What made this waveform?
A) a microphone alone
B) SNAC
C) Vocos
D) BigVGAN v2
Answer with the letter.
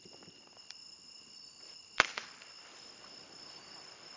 D